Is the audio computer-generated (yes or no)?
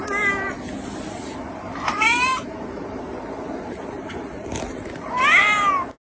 no